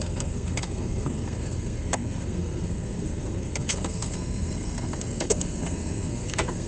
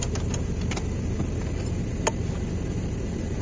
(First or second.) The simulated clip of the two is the first